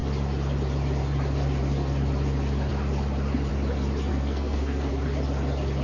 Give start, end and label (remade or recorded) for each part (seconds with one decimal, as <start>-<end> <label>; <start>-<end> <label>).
0.0-4.1 recorded; 4.1-4.9 remade; 4.9-5.8 recorded